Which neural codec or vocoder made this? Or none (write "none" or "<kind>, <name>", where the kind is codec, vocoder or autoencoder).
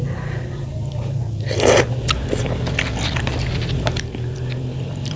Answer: none